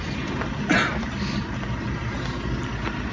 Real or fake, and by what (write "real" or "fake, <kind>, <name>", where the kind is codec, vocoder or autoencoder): real